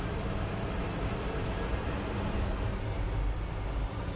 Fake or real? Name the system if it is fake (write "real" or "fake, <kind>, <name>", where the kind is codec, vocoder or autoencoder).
real